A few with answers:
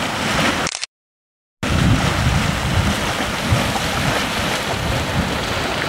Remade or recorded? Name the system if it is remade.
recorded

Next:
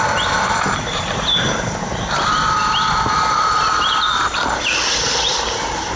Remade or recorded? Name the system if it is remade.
remade, vocoder, BigVGAN v2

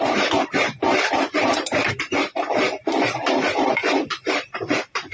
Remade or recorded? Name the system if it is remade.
remade, vocoder, BigVGAN v2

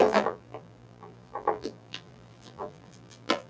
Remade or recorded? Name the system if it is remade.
remade, vocoder, BigVGAN v2